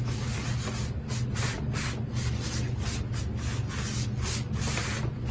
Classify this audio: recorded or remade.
recorded